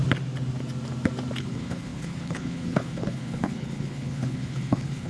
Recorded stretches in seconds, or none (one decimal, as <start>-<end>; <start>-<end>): 0.0-1.4